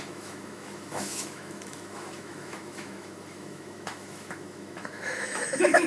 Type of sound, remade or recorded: remade